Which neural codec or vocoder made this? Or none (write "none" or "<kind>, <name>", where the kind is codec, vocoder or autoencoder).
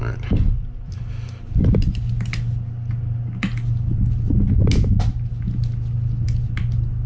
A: none